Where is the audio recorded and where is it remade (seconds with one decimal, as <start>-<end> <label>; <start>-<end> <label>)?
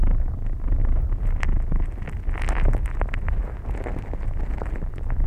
0.0-0.8 remade; 0.8-4.0 recorded; 4.0-5.3 remade